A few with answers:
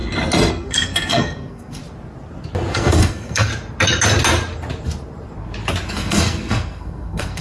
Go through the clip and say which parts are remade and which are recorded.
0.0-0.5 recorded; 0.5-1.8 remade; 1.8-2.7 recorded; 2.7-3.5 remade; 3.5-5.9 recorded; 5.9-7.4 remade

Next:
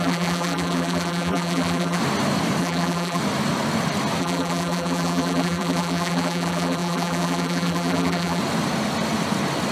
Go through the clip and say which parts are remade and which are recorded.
0.0-2.0 remade; 2.0-2.6 recorded; 2.6-3.2 remade; 3.2-4.2 recorded; 4.2-8.4 remade; 8.4-9.7 recorded

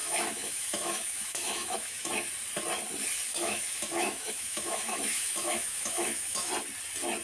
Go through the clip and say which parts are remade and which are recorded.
0.0-2.1 remade; 2.1-3.3 recorded; 3.3-6.5 remade; 6.5-7.2 recorded

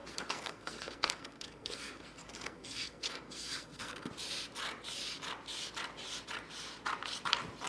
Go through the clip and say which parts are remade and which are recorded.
0.0-4.1 remade; 4.1-7.7 recorded

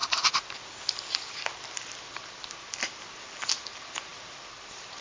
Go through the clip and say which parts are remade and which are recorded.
0.0-3.0 remade; 3.0-4.1 recorded; 4.1-5.0 remade

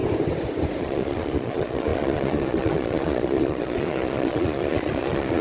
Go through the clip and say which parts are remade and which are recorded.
0.0-0.8 recorded; 0.8-5.4 remade